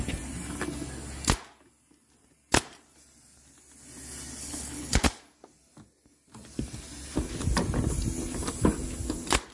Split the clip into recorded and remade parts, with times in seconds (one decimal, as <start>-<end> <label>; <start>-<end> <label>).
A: 0.0-4.4 recorded; 4.4-5.0 remade; 5.0-9.5 recorded

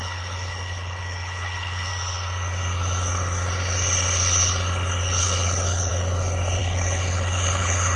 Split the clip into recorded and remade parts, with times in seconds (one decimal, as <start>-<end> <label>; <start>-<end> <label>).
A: 0.0-1.9 remade; 1.9-5.2 recorded; 5.2-5.9 remade; 5.9-6.6 recorded; 6.6-8.0 remade